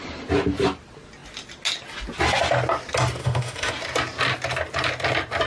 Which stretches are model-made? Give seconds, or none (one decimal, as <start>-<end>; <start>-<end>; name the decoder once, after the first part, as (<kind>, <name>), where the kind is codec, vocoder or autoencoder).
3.2-3.7 (autoencoder, DAC-VAE)